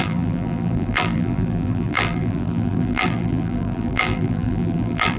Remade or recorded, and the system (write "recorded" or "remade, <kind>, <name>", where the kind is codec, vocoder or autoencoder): remade, vocoder, BigVGAN v2